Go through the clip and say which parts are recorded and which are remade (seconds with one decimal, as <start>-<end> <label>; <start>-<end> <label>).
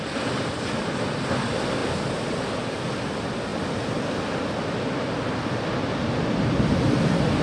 0.0-3.5 remade; 3.5-7.4 recorded